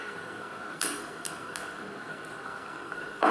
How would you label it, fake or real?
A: fake